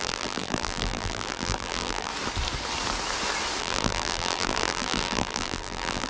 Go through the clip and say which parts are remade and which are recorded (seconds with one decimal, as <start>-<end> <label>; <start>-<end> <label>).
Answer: 0.0-2.1 remade; 2.1-3.6 recorded; 3.6-6.1 remade